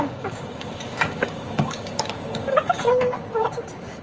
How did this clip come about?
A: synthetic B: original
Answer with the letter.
A